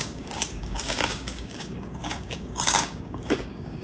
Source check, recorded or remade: remade